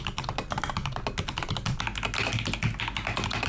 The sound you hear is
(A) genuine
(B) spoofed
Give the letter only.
A